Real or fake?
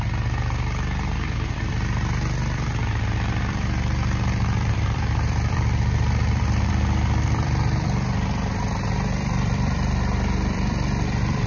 fake